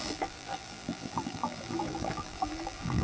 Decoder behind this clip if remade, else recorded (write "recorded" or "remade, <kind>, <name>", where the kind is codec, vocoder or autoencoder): remade, vocoder, BigVGAN v2